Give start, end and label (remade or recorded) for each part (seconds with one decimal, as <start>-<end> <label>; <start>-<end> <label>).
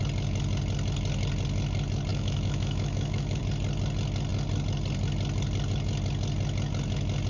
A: 0.0-2.1 recorded; 2.1-3.4 remade; 3.4-7.3 recorded